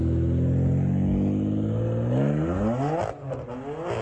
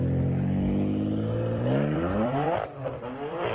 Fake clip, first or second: second